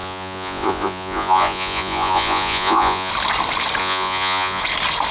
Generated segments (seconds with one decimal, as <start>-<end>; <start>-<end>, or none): 0.0-3.1; 3.8-4.6